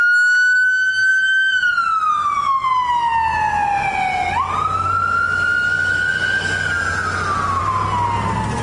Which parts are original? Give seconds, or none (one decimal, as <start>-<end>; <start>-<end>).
0.0-8.6